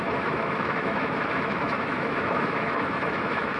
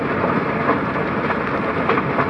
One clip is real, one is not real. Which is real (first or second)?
second